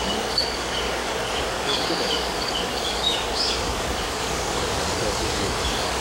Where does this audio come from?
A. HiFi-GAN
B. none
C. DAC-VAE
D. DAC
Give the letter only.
D